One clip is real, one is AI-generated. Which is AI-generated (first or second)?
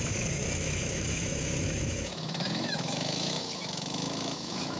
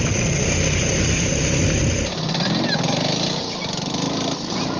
first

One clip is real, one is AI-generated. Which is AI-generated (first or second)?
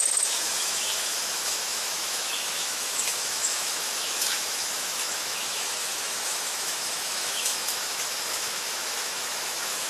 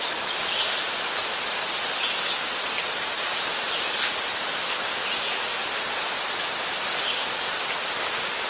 first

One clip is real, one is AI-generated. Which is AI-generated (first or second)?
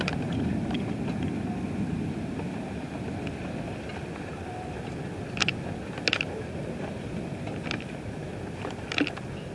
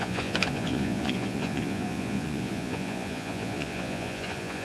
second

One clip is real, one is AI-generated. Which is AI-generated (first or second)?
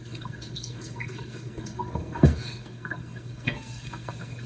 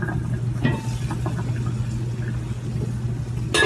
first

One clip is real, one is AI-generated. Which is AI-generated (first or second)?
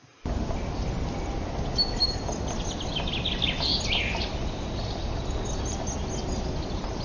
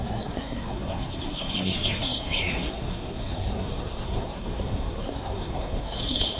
second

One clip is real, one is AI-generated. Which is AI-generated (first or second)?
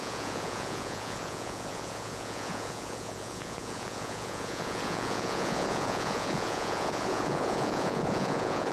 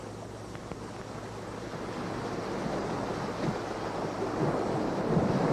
first